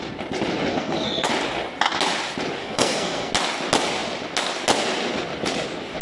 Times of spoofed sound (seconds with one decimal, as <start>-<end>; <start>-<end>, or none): 0.7-1.3; 2.6-3.3